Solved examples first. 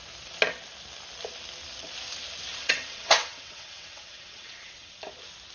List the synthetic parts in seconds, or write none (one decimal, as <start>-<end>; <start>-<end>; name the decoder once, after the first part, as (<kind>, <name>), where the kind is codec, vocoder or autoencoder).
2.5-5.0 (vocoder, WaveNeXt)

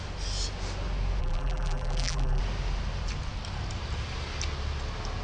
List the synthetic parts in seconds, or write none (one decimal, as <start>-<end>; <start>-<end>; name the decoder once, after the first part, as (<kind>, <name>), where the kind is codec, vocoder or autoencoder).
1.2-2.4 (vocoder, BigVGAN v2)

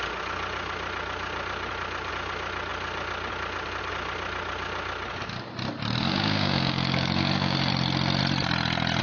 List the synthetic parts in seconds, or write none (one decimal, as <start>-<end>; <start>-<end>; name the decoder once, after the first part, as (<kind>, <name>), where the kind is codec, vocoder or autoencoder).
6.0-7.7 (codec, DAC)

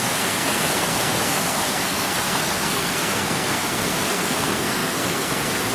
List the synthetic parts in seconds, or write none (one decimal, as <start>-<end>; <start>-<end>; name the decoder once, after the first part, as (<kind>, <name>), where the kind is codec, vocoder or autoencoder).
0.0-5.7 (codec, SNAC)